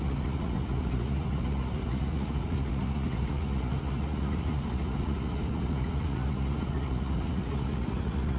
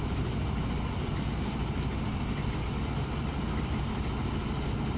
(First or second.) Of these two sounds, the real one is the second